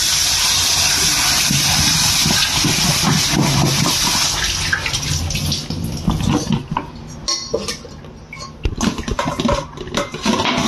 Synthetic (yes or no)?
no